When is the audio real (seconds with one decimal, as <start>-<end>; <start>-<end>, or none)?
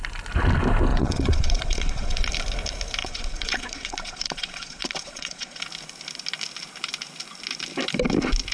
0.0-0.9; 2.3-3.0; 5.6-8.5